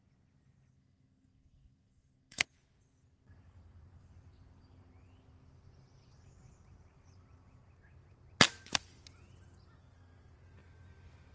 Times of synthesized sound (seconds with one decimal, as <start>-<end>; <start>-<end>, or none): 0.7-2.5

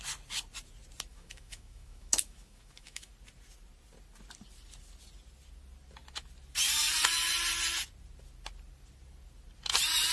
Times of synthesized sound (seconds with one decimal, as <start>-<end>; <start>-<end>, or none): 1.1-3.1

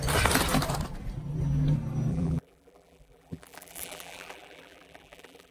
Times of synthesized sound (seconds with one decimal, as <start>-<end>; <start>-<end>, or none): 2.1-5.5

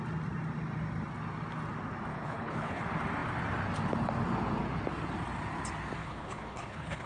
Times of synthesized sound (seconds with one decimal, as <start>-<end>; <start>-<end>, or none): 2.1-2.8; 6.0-7.1